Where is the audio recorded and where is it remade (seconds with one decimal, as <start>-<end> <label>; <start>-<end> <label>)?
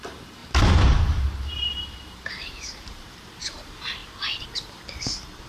0.0-4.0 remade; 4.0-5.5 recorded